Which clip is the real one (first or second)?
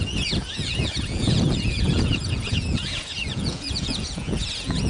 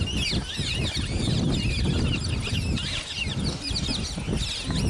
second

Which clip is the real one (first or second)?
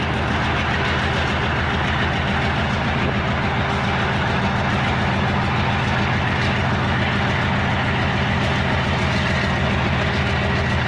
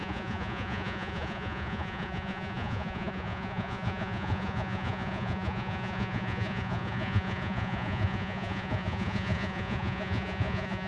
first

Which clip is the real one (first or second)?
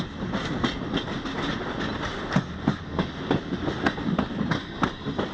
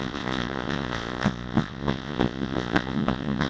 first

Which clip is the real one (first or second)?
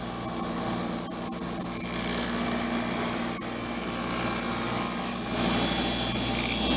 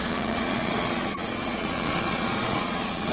first